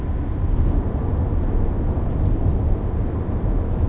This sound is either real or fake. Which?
real